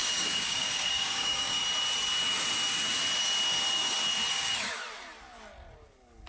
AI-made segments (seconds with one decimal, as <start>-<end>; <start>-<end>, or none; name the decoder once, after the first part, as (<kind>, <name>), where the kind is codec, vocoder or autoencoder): 0.0-1.6 (codec, DAC); 4.3-4.8